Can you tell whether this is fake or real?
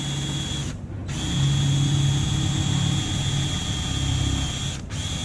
real